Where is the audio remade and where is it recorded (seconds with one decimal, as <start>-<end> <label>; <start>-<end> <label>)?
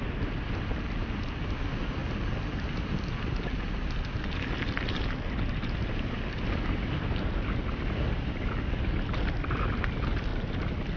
0.0-11.0 recorded